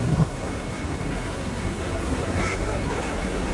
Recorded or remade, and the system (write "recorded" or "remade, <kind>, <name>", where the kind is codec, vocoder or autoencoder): remade, codec, SNAC